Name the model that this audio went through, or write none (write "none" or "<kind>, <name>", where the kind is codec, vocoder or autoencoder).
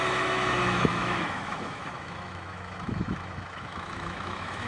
autoencoder, DAC-VAE